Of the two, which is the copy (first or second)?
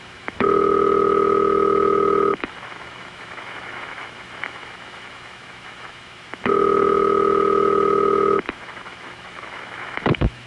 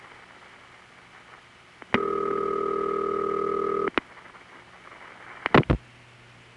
first